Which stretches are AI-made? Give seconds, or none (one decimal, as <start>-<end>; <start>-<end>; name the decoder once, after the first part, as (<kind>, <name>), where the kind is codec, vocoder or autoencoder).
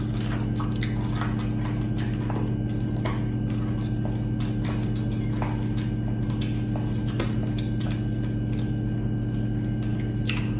none